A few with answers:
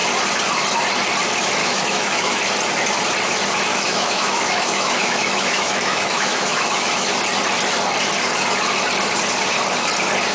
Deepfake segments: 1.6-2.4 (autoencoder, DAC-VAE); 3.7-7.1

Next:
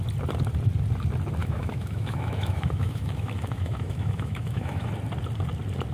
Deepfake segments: 1.4-4.9 (autoencoder, DAC-VAE)

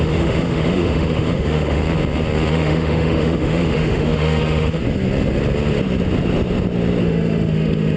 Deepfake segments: 0.0-1.8 (autoencoder, DAC-VAE); 2.5-4.8; 7.0-8.0

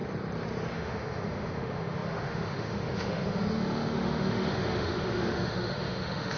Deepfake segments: 0.7-6.4 (autoencoder, DAC-VAE)

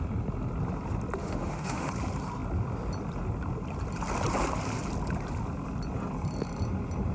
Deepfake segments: 1.2-1.9 (autoencoder, DAC-VAE)

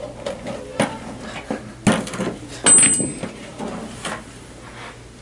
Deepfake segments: none